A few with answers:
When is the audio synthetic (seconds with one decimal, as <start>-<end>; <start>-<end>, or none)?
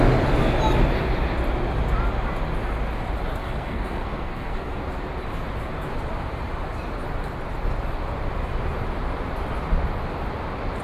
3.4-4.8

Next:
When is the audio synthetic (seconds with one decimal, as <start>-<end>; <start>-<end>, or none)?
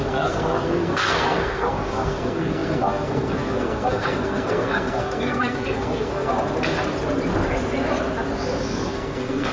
0.0-6.3; 8.6-9.5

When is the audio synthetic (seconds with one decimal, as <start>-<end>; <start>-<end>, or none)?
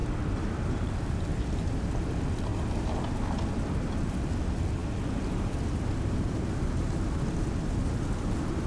none